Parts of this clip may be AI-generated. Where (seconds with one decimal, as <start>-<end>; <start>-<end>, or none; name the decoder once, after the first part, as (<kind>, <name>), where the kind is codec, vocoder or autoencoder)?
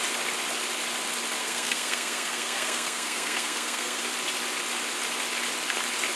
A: 1.4-4.0 (codec, SNAC)